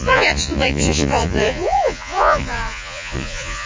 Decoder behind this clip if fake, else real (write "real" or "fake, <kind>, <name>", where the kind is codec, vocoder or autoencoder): fake, vocoder, Vocos